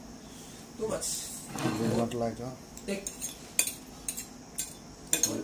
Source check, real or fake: real